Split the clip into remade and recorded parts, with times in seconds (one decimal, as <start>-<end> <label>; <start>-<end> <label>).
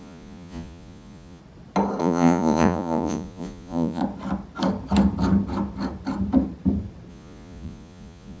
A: 0.0-1.4 remade; 1.4-2.0 recorded; 2.0-4.0 remade; 4.0-7.1 recorded; 7.1-8.4 remade